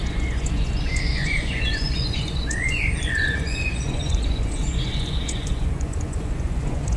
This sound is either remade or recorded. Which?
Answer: remade